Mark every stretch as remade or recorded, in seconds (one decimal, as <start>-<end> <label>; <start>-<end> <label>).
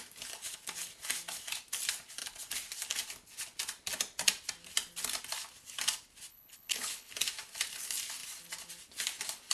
0.0-6.3 recorded; 6.3-7.1 remade; 7.1-9.5 recorded